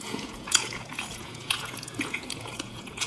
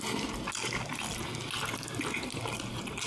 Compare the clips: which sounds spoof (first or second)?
first